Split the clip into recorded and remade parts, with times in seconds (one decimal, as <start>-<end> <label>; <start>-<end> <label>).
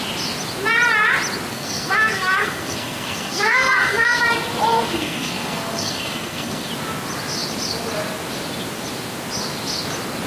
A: 0.0-1.5 recorded; 1.5-4.2 remade; 4.2-4.7 recorded; 4.7-6.7 remade; 6.7-10.3 recorded